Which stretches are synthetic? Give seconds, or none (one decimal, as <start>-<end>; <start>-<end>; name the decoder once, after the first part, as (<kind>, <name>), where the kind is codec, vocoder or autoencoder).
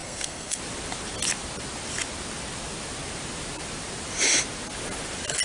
0.0-0.6 (codec, SNAC)